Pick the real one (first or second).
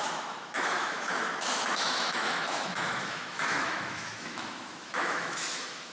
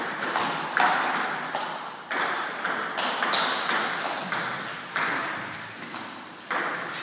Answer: second